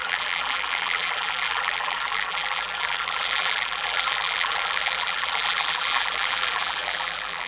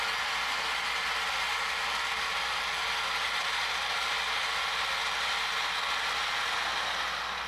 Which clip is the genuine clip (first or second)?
second